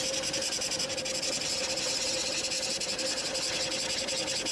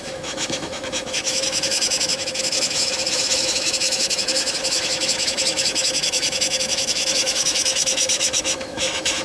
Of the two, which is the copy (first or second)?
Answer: second